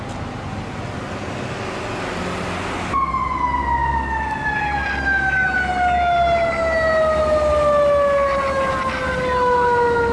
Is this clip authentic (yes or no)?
yes